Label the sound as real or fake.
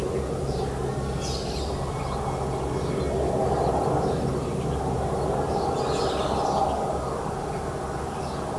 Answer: real